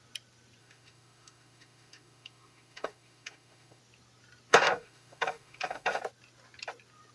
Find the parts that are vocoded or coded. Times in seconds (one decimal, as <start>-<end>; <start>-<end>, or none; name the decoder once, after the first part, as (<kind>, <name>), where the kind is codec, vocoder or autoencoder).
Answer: 0.6-3.8 (autoencoder, DAC-VAE); 4.5-6.0